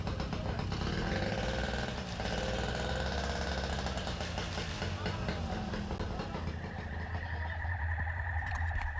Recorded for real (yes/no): yes